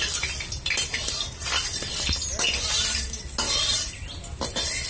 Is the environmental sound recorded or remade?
recorded